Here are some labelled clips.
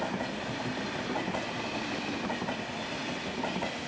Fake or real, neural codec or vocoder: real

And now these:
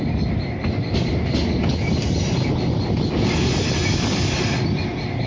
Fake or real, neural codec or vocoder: real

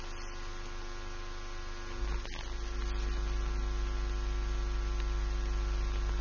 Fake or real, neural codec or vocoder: real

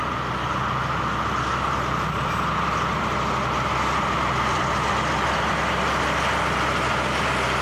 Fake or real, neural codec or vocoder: fake, vocoder, BigVGAN v2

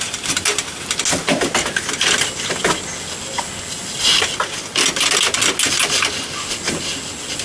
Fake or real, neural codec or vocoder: real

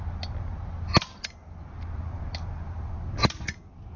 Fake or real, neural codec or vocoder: real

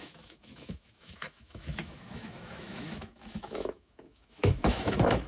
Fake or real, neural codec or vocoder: fake, autoencoder, DAC-VAE